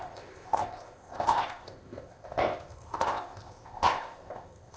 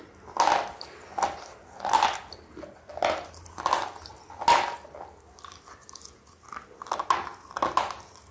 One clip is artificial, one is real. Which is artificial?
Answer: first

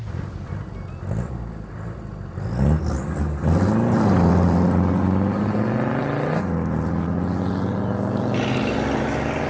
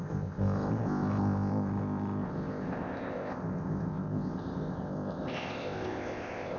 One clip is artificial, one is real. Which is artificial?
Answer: second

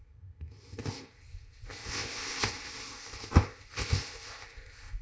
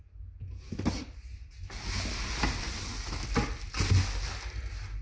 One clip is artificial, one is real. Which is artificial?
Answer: first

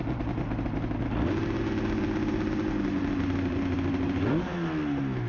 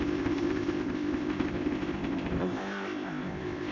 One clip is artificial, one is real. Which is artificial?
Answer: second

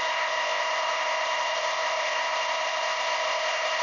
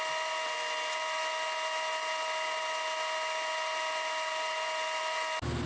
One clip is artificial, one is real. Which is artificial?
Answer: first